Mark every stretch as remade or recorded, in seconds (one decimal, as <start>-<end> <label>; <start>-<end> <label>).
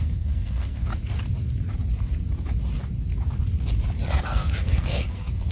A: 0.0-0.9 remade; 0.9-4.2 recorded; 4.2-5.5 remade